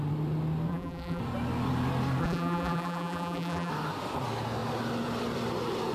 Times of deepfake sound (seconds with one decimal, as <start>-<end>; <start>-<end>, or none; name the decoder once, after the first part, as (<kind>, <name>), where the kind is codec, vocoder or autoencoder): 0.7-1.2 (vocoder, BigVGAN v2); 2.2-3.7